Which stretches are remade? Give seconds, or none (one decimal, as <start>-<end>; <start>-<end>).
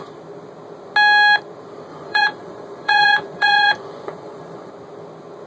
1.9-4.7